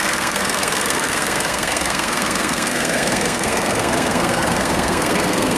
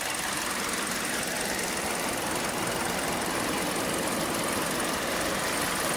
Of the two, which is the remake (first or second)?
first